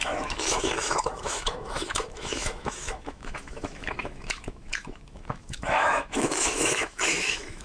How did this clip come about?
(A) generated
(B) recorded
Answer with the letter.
A